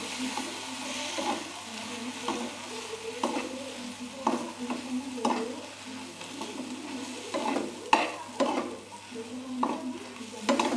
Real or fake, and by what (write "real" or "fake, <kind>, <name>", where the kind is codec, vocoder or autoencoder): real